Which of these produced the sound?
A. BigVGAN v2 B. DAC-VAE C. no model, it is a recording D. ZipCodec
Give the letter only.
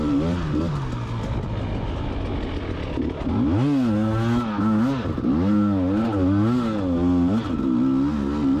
C